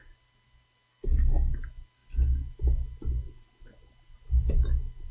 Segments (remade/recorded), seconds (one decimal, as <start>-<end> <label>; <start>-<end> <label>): 0.0-0.9 recorded; 0.9-1.5 remade; 1.5-5.1 recorded